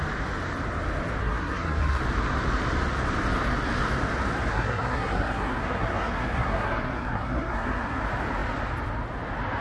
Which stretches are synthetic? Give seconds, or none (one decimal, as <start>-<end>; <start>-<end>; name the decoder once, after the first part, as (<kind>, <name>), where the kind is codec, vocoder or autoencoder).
1.2-2.0 (codec, SNAC); 4.5-8.0